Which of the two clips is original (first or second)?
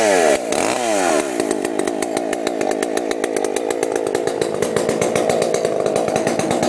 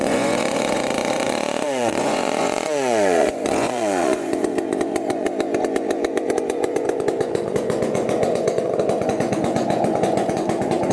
first